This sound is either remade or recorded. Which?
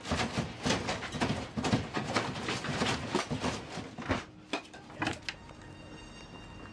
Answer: recorded